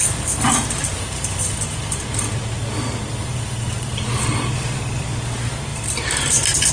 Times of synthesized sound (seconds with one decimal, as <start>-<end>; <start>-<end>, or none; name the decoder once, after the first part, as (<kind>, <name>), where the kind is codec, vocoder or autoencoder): 3.3-4.3 (vocoder, BigVGAN v2)